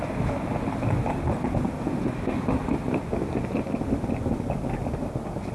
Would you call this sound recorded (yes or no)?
yes